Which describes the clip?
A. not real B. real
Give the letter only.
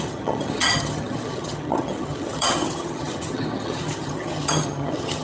A